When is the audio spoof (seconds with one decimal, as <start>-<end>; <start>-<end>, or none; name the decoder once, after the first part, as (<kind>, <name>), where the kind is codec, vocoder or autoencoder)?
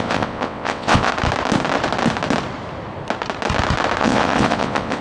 0.0-1.1 (vocoder, WaveNeXt); 4.0-5.0